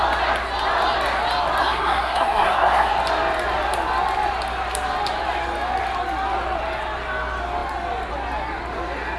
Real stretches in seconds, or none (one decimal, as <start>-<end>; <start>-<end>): 0.0-1.6; 2.9-9.2